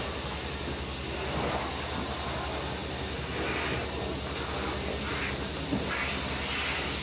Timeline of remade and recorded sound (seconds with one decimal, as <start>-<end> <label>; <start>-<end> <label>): 0.0-7.0 recorded